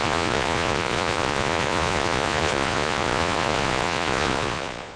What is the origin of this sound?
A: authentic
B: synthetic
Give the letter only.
B